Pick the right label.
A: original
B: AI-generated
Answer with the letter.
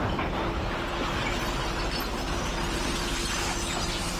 B